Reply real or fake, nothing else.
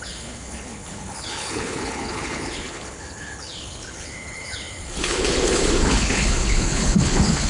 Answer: fake